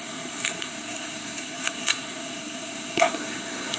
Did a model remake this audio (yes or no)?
yes